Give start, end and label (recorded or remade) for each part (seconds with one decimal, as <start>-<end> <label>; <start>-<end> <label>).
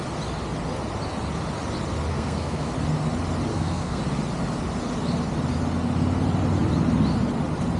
0.0-2.1 recorded; 2.1-2.7 remade; 2.7-3.5 recorded; 3.5-4.0 remade; 4.0-7.8 recorded